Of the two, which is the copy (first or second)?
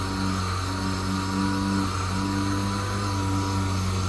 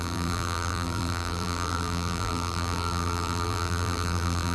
second